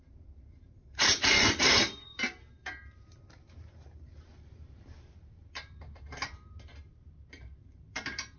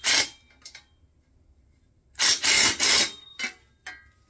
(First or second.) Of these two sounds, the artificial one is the first